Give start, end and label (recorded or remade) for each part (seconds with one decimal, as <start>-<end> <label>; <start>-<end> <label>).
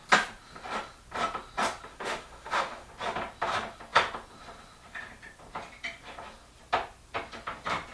0.0-1.9 recorded; 1.9-2.9 remade; 2.9-7.9 recorded